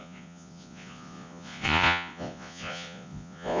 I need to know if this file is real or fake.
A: fake